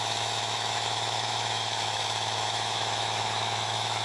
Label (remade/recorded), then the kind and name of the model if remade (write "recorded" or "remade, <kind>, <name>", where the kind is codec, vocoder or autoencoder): remade, autoencoder, DAC-VAE